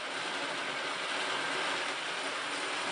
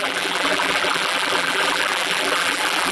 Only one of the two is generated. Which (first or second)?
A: second